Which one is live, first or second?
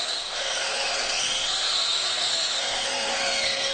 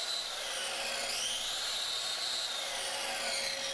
second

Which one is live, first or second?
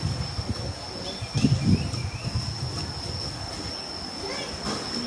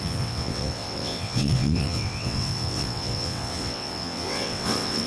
first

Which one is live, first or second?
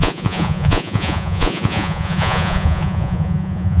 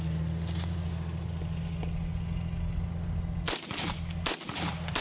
second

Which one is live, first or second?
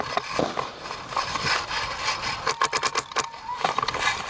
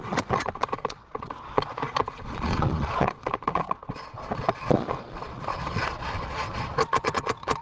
first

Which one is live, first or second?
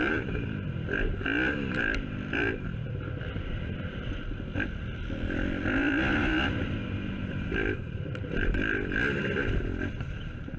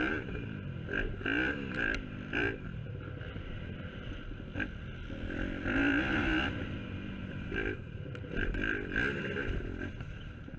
second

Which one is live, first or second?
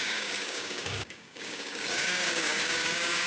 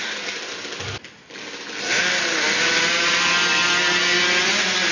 second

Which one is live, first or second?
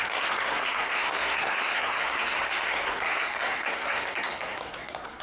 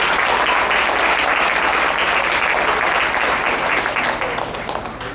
second